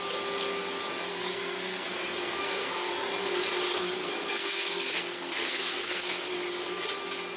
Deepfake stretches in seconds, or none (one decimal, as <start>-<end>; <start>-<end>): 1.1-2.9; 3.7-6.3

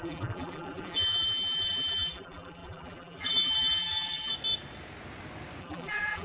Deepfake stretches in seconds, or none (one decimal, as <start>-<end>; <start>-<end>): 0.0-4.3; 5.6-6.2

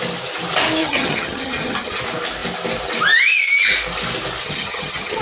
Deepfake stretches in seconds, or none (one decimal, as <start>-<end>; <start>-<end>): 0.8-2.0; 4.4-5.2

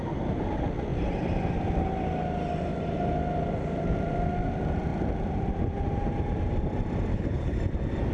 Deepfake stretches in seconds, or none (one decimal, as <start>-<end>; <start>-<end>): 7.1-7.6

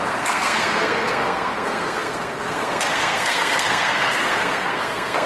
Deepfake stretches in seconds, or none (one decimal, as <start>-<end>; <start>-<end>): 0.0-5.3

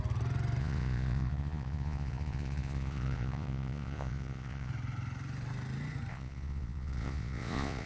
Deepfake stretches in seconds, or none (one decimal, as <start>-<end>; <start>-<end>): 0.6-4.7; 6.1-7.9

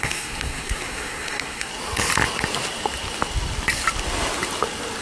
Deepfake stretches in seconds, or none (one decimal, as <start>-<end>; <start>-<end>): 0.0-1.7